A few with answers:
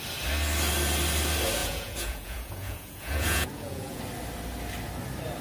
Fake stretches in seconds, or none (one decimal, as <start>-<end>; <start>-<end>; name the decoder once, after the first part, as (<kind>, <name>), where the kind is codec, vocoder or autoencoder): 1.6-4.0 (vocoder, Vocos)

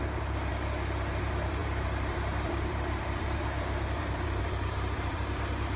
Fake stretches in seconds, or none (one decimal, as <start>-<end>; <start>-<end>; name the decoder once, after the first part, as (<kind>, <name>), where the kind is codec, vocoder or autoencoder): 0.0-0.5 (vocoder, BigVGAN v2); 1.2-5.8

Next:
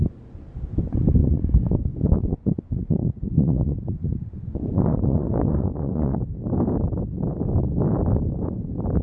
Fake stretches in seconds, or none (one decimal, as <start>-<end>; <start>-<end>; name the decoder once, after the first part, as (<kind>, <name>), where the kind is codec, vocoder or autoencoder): 1.2-6.2 (vocoder, Vocos)

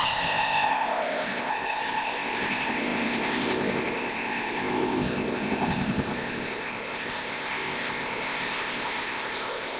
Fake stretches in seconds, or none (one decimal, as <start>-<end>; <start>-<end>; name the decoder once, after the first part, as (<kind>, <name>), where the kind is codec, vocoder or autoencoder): 0.0-9.8 (codec, ZipCodec)